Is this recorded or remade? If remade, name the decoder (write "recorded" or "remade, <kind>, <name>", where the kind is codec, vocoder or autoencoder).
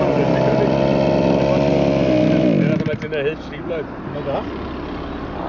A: recorded